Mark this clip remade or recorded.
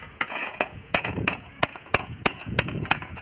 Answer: remade